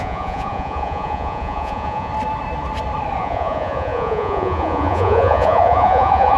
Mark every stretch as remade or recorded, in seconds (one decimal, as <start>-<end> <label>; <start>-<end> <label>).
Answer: 0.0-2.1 remade; 2.1-3.2 recorded; 3.2-6.4 remade